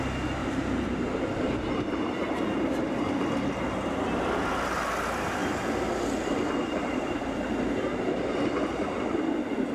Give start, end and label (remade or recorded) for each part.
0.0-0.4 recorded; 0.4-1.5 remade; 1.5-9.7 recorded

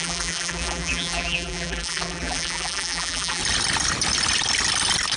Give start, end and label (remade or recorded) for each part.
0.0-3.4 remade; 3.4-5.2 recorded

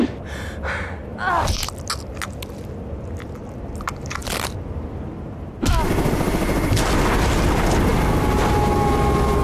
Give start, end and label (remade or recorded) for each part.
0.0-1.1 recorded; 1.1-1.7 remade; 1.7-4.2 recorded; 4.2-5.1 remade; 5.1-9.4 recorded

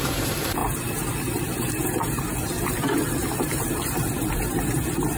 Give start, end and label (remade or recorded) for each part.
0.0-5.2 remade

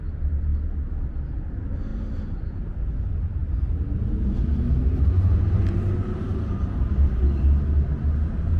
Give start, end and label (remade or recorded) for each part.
0.0-8.6 recorded

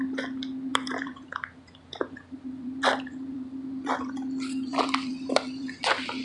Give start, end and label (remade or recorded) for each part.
0.0-0.7 recorded; 0.7-4.1 remade; 4.1-4.7 recorded; 4.7-5.8 remade; 5.8-6.2 recorded

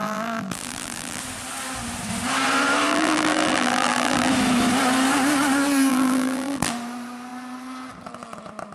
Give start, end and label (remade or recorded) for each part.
0.0-1.2 remade; 1.2-2.9 recorded; 2.9-4.3 remade; 4.3-5.9 recorded; 5.9-6.7 remade; 6.7-8.7 recorded